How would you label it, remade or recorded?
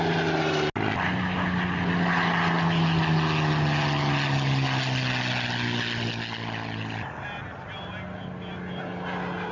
recorded